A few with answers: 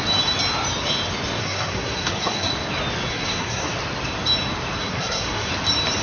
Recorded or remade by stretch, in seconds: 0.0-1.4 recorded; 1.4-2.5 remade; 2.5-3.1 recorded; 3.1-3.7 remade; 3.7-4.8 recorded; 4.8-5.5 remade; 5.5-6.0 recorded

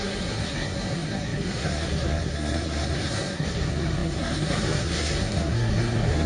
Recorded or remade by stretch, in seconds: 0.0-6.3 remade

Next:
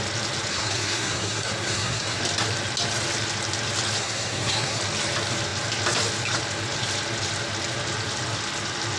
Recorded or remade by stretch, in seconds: 0.0-0.5 recorded; 0.5-2.2 remade; 2.2-4.0 recorded; 4.0-4.8 remade; 4.8-9.0 recorded

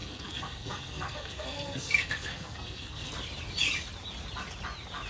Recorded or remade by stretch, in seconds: 0.0-3.1 remade; 3.1-5.1 recorded

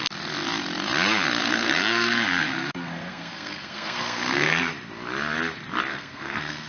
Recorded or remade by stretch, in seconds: 0.0-1.4 recorded; 1.4-4.7 remade; 4.7-5.9 recorded; 5.9-6.7 remade

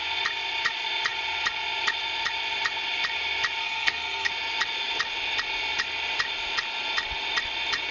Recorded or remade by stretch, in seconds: 0.0-3.6 recorded; 3.6-4.3 remade; 4.3-7.9 recorded